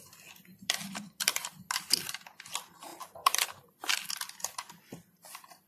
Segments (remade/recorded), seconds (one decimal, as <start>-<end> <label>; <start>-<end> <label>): 0.0-0.5 recorded; 0.5-1.7 remade; 1.7-2.9 recorded; 2.9-3.5 remade; 3.5-5.7 recorded